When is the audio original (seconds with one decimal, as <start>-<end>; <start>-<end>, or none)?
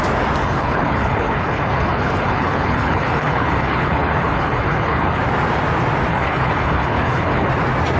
0.0-0.4; 5.2-6.1; 7.5-8.0